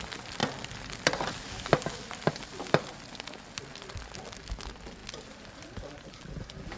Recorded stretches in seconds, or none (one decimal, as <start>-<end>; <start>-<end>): 0.0-6.8